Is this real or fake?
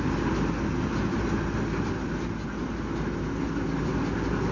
real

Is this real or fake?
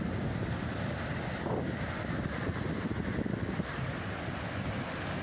real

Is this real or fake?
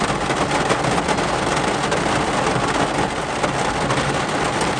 real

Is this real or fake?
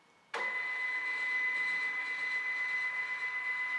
real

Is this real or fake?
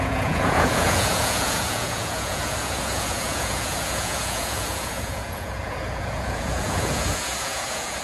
fake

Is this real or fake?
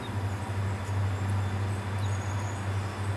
real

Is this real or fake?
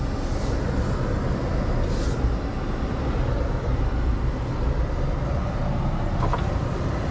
real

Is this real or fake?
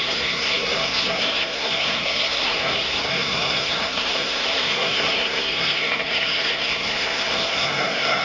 fake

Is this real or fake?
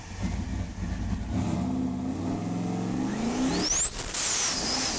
real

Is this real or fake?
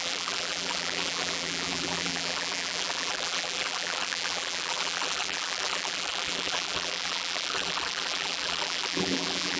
fake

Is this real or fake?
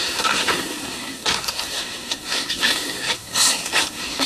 fake